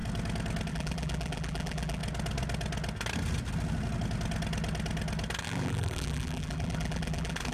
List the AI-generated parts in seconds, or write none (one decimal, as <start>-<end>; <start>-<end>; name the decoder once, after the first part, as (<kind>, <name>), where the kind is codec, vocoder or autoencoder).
0.7-2.0 (vocoder, BigVGAN v2); 5.4-7.5